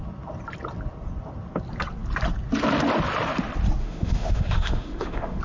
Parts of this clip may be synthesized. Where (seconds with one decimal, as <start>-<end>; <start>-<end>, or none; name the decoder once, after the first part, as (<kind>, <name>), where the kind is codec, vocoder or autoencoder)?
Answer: 3.8-5.4 (autoencoder, DAC-VAE)